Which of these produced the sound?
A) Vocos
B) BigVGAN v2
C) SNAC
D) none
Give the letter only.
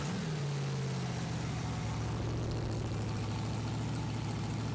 D